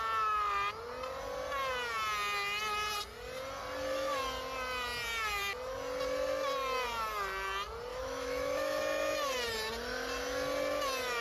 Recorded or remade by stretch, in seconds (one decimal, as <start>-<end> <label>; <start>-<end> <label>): 0.0-7.9 recorded; 7.9-8.8 remade; 8.8-11.2 recorded